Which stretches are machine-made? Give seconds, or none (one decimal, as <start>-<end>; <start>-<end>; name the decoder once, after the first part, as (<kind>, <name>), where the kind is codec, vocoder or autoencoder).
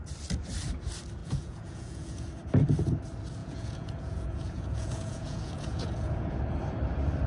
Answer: 1.2-2.3 (vocoder, Vocos); 3.4-6.4